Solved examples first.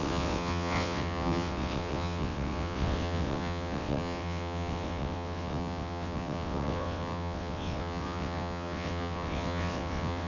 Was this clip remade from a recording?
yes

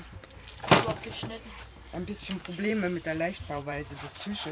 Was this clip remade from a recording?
yes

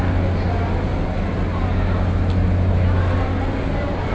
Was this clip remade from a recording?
no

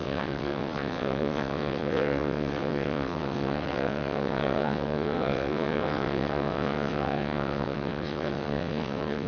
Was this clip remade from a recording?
yes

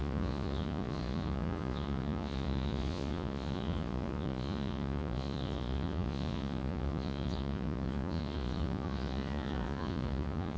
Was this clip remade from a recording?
yes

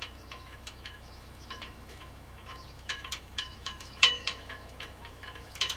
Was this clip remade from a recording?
yes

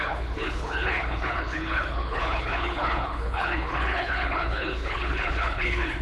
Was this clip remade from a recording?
yes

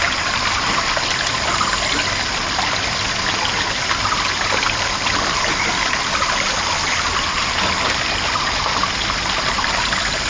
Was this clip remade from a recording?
no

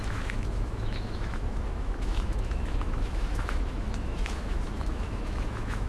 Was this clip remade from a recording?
yes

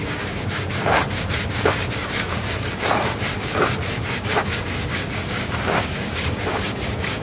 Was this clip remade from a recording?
yes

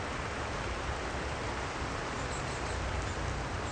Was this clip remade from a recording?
no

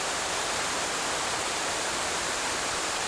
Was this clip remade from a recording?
no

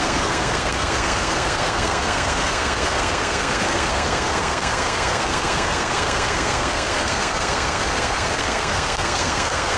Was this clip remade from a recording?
yes